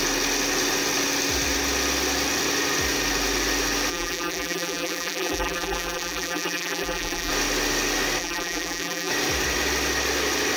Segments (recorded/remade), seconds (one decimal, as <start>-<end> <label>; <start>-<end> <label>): 0.0-3.9 recorded; 3.9-7.3 remade; 7.3-8.2 recorded; 8.2-9.1 remade; 9.1-10.6 recorded